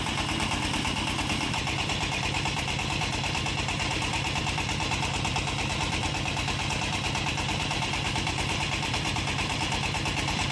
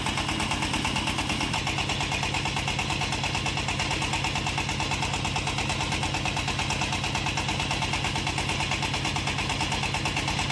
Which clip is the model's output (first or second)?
first